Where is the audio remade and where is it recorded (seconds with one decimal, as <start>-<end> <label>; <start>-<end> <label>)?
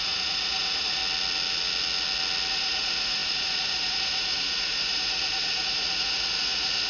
0.0-1.0 remade; 1.0-2.5 recorded; 2.5-6.9 remade